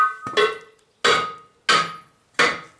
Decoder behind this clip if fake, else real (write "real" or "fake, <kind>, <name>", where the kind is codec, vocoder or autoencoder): real